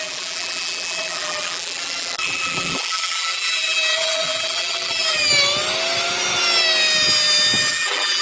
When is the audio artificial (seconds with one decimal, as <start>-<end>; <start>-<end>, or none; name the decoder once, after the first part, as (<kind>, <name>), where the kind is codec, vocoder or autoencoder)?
0.0-5.3 (vocoder, BigVGAN v2); 7.7-8.2

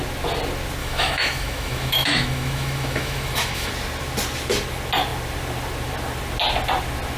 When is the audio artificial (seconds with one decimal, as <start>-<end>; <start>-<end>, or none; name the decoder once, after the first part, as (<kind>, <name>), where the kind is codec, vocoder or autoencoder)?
0.8-3.7 (autoencoder, DAC-VAE)

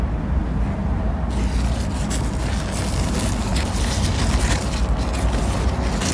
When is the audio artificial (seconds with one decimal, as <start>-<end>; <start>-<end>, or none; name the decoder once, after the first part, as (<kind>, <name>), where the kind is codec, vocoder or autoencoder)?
none

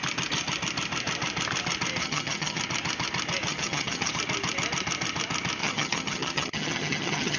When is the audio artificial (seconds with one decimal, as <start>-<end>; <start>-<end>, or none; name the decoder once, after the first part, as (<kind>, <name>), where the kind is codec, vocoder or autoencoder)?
2.0-2.6 (vocoder, HiFi-GAN); 3.5-4.1; 5.6-7.4

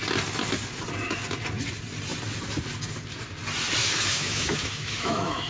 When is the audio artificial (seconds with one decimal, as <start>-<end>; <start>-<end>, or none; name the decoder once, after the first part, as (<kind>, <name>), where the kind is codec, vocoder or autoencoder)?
3.8-5.5 (autoencoder, DAC-VAE)